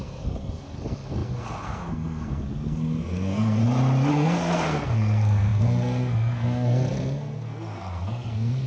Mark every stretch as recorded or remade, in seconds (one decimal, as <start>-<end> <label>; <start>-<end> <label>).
0.0-3.6 remade; 3.6-4.1 recorded; 4.1-8.7 remade